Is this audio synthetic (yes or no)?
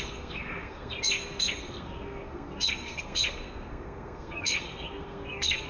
yes